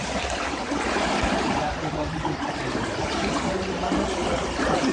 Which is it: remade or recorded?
recorded